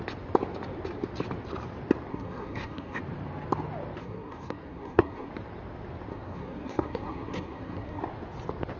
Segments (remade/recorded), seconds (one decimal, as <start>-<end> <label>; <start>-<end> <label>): 0.0-2.1 recorded; 2.1-3.0 remade; 3.0-4.0 recorded; 4.0-5.3 remade; 5.3-6.1 recorded; 6.1-8.0 remade; 8.0-8.8 recorded

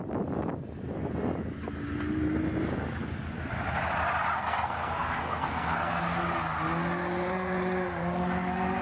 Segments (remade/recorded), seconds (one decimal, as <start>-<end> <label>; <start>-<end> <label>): 0.0-4.4 recorded; 4.4-6.0 remade; 6.0-8.8 recorded